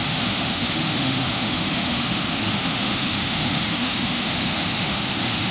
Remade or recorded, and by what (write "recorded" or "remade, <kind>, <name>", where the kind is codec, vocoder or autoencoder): remade, autoencoder, DAC-VAE